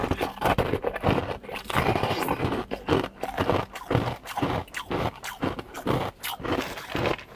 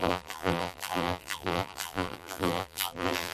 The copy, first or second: second